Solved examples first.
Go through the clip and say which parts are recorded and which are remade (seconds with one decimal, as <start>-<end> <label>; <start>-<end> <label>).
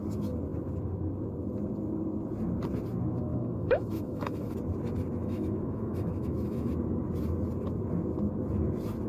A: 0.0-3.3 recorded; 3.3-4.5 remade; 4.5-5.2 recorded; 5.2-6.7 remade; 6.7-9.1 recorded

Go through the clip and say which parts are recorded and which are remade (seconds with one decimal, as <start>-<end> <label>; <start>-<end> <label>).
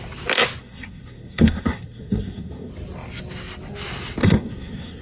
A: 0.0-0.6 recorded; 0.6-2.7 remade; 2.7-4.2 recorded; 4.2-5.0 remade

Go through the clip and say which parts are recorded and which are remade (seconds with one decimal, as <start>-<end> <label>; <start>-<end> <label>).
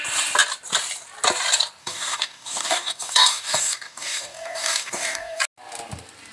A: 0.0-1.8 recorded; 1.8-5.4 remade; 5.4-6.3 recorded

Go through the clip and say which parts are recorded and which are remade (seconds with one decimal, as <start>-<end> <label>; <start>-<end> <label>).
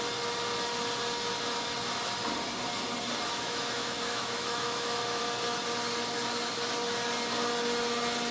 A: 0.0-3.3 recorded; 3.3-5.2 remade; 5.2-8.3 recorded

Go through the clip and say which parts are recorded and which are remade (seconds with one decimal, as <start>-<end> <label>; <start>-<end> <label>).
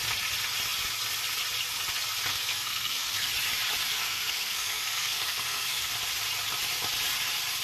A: 0.0-2.3 recorded; 2.3-3.3 remade; 3.3-3.9 recorded; 3.9-5.9 remade; 5.9-7.6 recorded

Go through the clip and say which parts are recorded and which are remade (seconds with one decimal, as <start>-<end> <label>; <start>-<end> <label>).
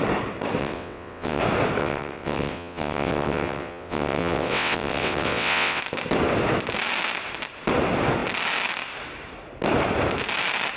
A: 0.0-0.6 recorded; 0.6-1.4 remade; 1.4-1.8 recorded; 1.8-5.8 remade; 5.8-10.8 recorded